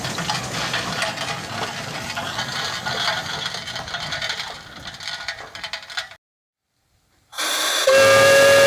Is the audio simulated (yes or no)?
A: no